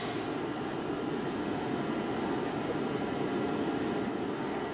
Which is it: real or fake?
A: real